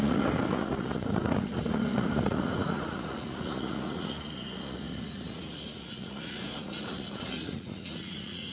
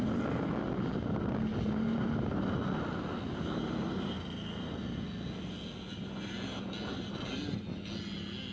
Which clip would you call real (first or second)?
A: second